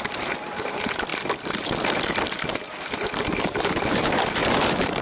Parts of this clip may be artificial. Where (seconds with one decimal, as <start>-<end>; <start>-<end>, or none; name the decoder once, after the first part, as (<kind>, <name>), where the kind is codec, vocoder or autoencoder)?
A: 0.0-1.1 (vocoder, BigVGAN v2); 3.0-5.0